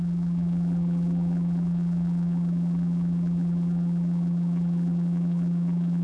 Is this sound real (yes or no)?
no